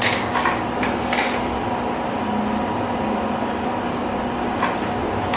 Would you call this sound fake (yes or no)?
no